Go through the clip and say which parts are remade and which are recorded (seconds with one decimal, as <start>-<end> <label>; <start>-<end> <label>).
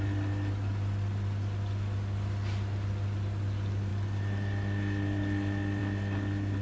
0.0-6.6 recorded